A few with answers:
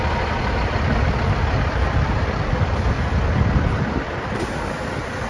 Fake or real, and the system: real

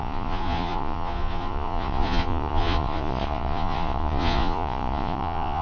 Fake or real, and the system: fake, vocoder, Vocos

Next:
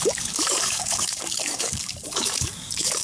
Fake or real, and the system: fake, codec, DAC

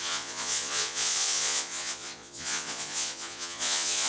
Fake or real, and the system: fake, vocoder, Vocos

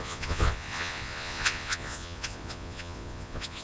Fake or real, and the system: fake, vocoder, Vocos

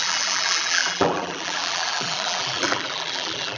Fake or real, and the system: fake, vocoder, BigVGAN v2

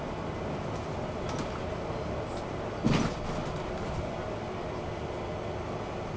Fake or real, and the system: real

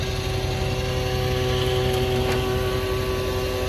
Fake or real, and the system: real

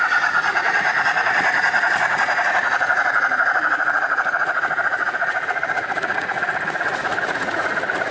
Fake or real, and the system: fake, vocoder, Vocos